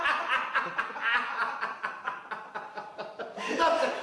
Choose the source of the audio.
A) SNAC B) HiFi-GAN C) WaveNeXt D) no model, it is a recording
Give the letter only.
D